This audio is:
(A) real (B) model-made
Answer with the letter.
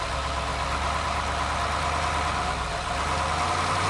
A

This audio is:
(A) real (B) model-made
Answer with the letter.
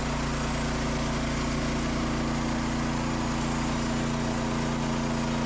A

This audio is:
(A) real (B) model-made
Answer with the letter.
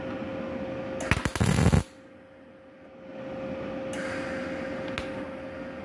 A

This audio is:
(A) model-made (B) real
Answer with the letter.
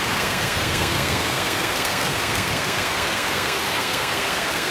A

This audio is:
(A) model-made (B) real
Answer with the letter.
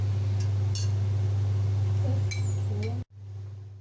B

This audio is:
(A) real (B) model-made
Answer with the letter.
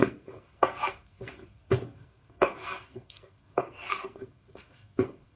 B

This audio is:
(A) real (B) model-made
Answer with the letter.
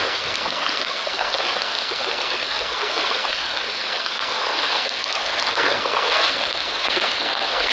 B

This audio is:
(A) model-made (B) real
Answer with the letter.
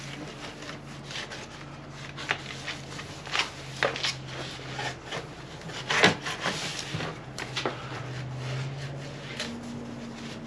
B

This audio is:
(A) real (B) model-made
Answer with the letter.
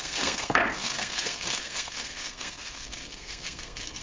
B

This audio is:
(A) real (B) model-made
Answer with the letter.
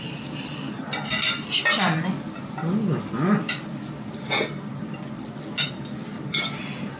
A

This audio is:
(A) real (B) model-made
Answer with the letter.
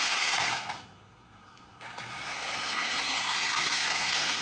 B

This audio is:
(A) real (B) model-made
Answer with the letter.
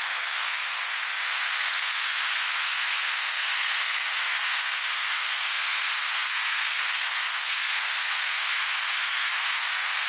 B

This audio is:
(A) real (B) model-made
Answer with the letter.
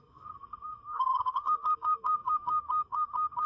B